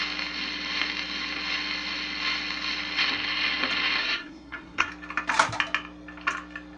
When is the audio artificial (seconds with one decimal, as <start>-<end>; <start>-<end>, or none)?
4.0-4.9